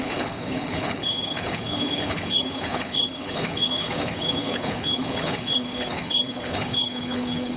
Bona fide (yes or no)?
no